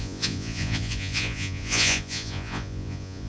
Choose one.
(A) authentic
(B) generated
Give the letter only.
B